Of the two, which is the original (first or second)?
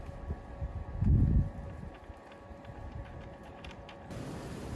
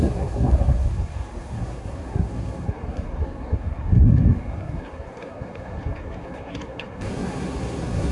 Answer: first